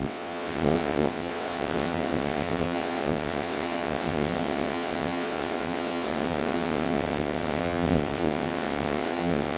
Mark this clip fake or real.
fake